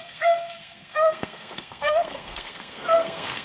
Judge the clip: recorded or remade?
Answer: remade